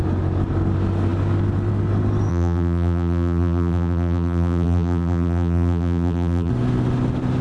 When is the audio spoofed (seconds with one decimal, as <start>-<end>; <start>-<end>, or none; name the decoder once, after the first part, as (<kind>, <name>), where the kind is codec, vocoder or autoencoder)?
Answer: 2.3-6.5 (vocoder, BigVGAN v2)